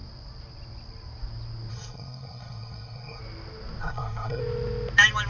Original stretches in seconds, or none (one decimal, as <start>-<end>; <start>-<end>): 0.0-1.7; 3.2-3.8; 4.4-5.3